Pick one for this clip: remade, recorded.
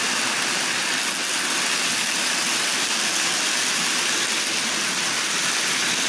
recorded